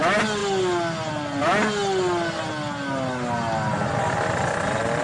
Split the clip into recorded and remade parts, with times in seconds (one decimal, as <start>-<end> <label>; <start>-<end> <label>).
0.0-5.0 recorded